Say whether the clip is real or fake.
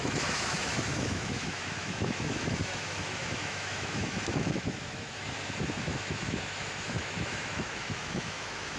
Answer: fake